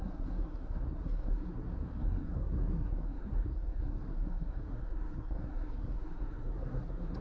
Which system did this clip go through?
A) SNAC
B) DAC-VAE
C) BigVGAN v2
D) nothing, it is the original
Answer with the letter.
A